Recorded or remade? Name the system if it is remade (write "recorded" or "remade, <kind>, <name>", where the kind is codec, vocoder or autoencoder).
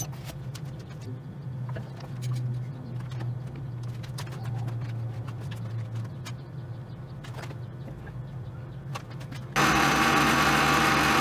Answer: recorded